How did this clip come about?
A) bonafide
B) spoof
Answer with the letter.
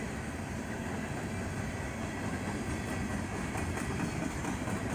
A